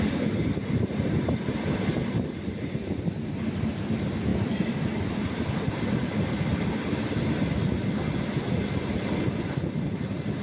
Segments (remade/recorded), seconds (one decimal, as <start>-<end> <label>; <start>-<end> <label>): 0.0-2.0 recorded; 2.0-2.8 remade; 2.8-4.3 recorded; 4.3-6.3 remade; 6.3-10.4 recorded